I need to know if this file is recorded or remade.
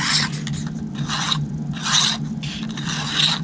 recorded